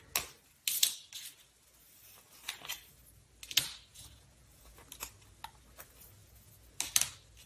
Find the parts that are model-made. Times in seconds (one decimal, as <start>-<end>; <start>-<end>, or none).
3.9-4.8; 6.2-6.7